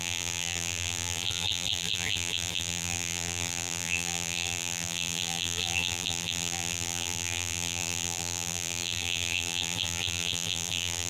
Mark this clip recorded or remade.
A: remade